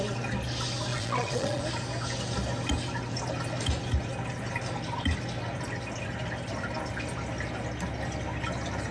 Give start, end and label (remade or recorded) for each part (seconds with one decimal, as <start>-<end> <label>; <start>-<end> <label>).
0.0-0.9 recorded; 0.9-1.6 remade; 1.6-8.9 recorded